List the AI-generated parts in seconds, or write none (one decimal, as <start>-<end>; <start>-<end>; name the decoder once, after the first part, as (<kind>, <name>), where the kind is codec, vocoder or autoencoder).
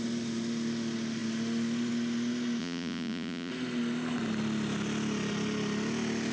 2.6-3.5 (vocoder, Vocos)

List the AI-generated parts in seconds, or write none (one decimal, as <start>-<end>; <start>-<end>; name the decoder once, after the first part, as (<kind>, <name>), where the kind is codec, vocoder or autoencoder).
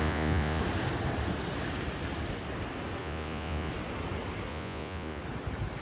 0.0-0.6 (vocoder, Vocos); 3.0-3.7; 4.5-5.2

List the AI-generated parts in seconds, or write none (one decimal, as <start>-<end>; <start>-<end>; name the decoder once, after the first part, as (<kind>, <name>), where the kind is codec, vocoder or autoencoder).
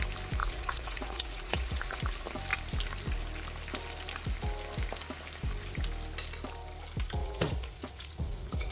0.4-2.0 (vocoder, Vocos); 7.2-8.7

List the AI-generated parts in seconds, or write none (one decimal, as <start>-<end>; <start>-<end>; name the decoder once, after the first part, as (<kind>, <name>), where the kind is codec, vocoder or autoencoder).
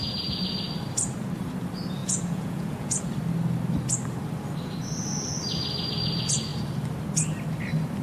2.0-3.0 (vocoder, Vocos)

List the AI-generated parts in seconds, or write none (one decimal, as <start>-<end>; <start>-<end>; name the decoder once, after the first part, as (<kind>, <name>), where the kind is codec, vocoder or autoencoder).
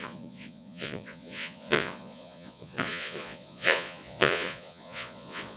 0.0-5.6 (vocoder, Vocos)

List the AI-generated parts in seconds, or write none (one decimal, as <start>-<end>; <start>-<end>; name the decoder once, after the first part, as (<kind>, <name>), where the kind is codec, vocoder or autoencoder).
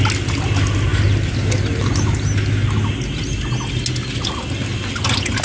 none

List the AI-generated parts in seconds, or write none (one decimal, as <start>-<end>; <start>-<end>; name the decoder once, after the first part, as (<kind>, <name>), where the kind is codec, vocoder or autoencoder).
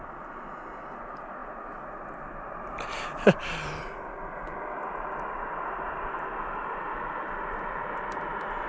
none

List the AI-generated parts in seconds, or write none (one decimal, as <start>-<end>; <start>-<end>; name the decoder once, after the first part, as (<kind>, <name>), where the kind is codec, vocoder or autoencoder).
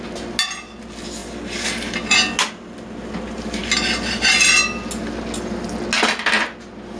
none